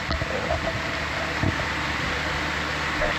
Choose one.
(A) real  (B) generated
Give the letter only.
A